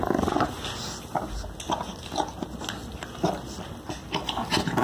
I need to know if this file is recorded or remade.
recorded